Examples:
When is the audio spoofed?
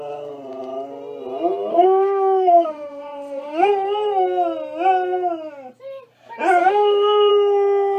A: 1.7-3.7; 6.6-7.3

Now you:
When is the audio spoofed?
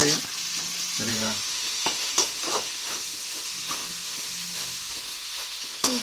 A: 1.1-6.0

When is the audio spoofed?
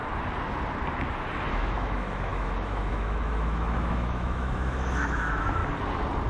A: 1.5-5.6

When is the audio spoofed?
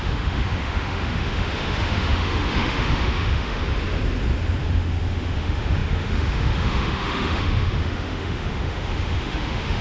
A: 0.0-3.6; 4.6-9.8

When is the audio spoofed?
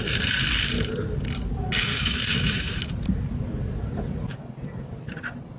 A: 1.9-2.8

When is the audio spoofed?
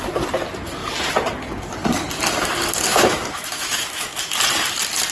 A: 2.9-4.4